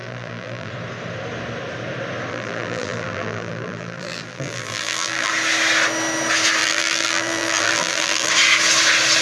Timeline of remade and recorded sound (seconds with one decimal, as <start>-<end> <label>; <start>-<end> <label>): 0.0-0.7 remade; 0.7-2.3 recorded; 2.3-5.3 remade; 5.3-6.6 recorded; 6.6-8.3 remade; 8.3-9.2 recorded

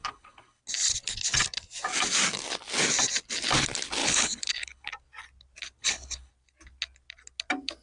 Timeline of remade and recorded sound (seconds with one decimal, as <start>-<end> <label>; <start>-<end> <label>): 0.0-0.6 remade; 0.6-4.0 recorded; 4.0-4.9 remade; 4.9-5.8 recorded; 5.8-6.3 remade; 6.3-7.8 recorded